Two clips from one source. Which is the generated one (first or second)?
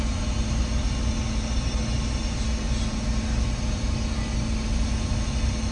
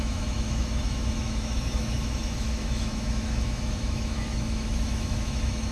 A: second